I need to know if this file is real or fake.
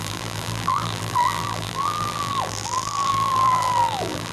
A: fake